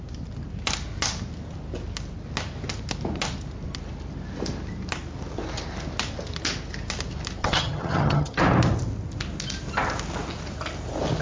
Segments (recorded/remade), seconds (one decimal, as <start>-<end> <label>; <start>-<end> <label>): 0.0-7.4 recorded; 7.4-8.4 remade; 8.4-11.2 recorded